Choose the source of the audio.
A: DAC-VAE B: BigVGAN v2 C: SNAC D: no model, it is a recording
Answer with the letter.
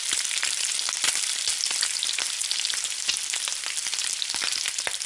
D